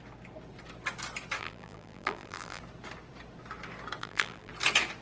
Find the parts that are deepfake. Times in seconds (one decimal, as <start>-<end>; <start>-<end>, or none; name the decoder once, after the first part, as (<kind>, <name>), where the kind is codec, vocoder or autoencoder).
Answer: 1.4-2.6 (vocoder, BigVGAN v2); 4.0-4.5